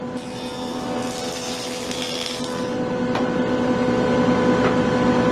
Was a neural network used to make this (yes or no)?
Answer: no